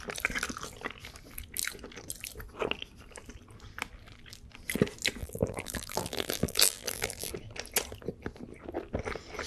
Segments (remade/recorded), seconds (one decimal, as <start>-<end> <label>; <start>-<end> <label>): 0.0-5.2 recorded; 5.2-7.3 remade; 7.3-9.5 recorded